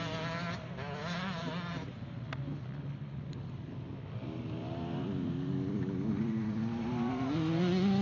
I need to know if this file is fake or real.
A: real